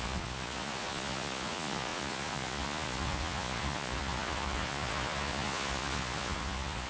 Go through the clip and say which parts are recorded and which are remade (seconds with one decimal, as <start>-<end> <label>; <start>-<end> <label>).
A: 0.0-6.9 remade